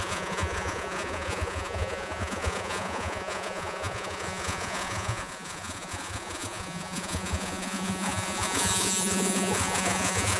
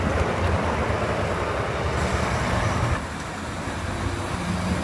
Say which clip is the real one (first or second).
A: second